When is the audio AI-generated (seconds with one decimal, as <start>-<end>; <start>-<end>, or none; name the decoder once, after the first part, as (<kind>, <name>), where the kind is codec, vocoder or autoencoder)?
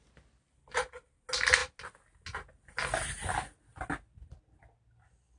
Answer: none